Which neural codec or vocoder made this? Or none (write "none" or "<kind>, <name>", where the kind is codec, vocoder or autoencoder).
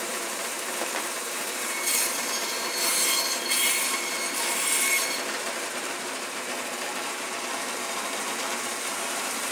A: vocoder, BigVGAN v2